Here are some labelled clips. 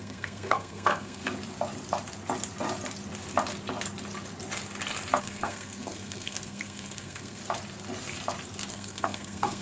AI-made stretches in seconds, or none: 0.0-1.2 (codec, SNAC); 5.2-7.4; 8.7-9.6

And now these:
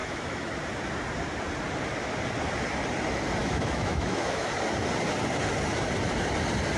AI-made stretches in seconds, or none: 0.0-0.5 (autoencoder, DAC-VAE); 3.4-4.5

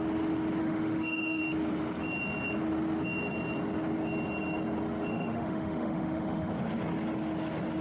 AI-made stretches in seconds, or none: 0.6-1.4 (autoencoder, DAC-VAE); 5.1-6.5

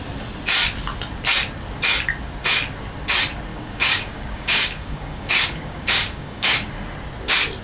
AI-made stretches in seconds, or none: 3.5-6.7 (codec, DAC)

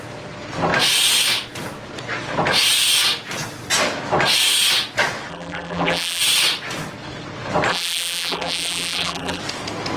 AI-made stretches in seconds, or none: 5.3-6.2 (vocoder, BigVGAN v2); 7.7-9.4

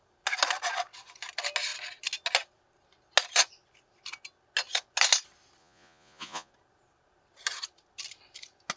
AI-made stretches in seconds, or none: 5.6-6.5 (vocoder, Vocos)